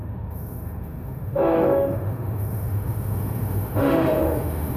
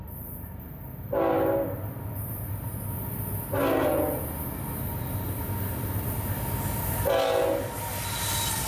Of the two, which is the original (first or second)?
second